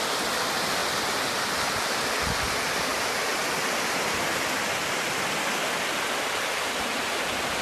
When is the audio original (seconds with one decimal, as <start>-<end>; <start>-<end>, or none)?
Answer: 0.0-7.6